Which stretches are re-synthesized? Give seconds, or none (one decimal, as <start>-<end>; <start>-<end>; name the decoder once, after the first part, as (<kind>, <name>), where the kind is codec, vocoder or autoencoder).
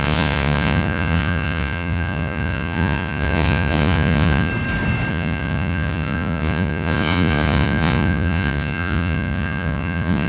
0.0-4.5 (vocoder, Vocos); 5.1-10.3